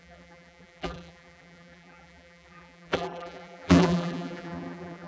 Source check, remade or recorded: remade